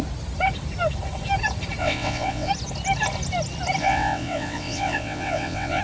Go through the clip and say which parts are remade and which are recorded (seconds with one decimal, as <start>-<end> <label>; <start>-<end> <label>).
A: 0.0-1.8 recorded; 1.8-2.5 remade; 2.5-3.8 recorded; 3.8-5.8 remade